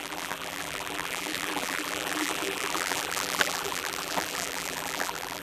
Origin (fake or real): fake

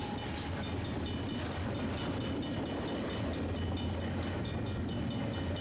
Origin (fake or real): real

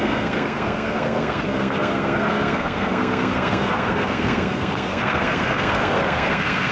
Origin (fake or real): fake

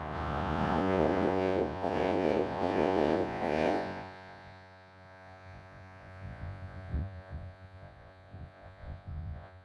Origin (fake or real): fake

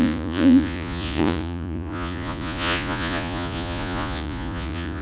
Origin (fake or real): fake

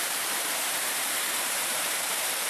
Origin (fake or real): fake